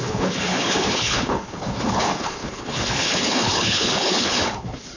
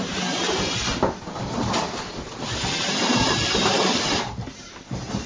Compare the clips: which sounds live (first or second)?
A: second